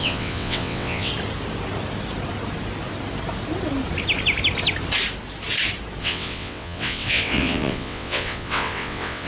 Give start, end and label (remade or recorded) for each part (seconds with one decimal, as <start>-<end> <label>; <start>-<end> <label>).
0.0-1.1 remade; 1.1-6.0 recorded; 6.0-9.3 remade